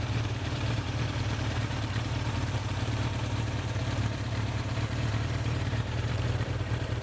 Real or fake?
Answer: fake